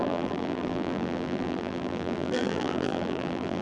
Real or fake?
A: fake